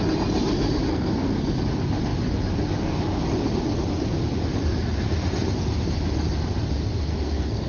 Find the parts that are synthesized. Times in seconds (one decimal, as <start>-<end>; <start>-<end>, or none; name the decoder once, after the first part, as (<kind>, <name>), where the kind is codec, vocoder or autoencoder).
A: 0.9-1.6 (codec, SNAC); 7.1-7.7